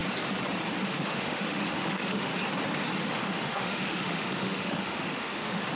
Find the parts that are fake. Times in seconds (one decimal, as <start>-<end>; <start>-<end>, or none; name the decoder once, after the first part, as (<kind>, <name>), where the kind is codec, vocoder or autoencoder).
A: 0.9-2.3 (autoencoder, DAC-VAE); 3.0-5.8